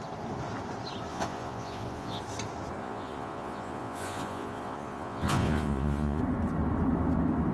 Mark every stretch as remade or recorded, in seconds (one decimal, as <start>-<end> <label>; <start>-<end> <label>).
0.0-1.1 recorded; 1.1-2.2 remade; 2.2-2.8 recorded; 2.8-6.2 remade; 6.2-7.5 recorded